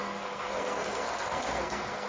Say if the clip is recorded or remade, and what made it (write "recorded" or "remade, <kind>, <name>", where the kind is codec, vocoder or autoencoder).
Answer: remade, codec, SNAC